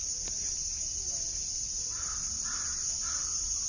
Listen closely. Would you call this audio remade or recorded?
recorded